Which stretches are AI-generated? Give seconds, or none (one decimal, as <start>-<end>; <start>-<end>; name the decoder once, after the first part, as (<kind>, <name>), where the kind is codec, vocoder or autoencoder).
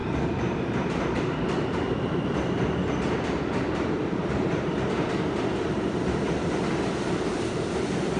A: none